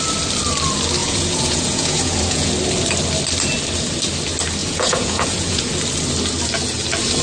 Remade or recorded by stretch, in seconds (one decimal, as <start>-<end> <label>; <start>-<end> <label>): 0.0-1.0 recorded; 1.0-2.5 remade; 2.5-4.6 recorded; 4.6-5.7 remade; 5.7-7.2 recorded